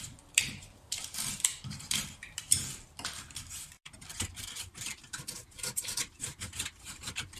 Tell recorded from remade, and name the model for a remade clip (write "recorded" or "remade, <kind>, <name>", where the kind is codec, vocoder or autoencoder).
remade, vocoder, BigVGAN v2